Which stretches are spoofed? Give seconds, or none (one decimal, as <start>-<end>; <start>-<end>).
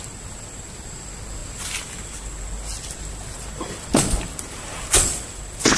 none